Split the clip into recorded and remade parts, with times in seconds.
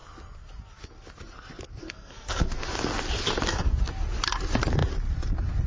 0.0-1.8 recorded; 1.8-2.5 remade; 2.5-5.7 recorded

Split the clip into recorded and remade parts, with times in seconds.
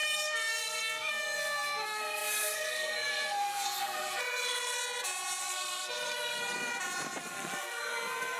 0.0-4.8 remade; 4.8-5.4 recorded; 5.4-6.7 remade; 6.7-7.2 recorded; 7.2-8.4 remade